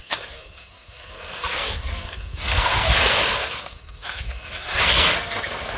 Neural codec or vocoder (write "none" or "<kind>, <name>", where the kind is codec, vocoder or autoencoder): codec, SNAC